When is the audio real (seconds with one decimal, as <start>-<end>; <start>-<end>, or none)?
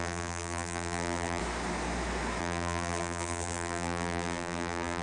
1.4-2.4